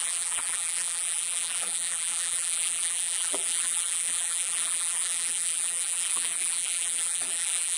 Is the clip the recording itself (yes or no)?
no